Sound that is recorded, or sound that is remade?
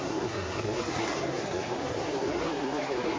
remade